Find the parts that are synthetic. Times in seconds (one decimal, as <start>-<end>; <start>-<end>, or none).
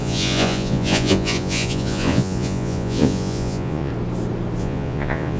0.0-3.9; 4.6-5.4